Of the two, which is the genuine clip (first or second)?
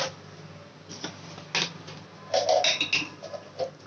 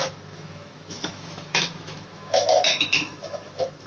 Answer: first